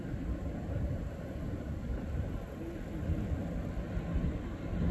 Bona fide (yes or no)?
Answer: yes